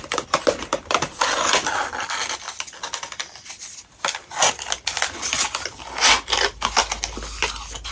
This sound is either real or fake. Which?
real